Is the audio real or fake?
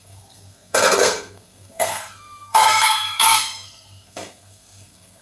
fake